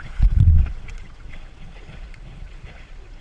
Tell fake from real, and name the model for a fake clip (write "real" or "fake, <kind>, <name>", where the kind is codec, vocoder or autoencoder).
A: fake, vocoder, Vocos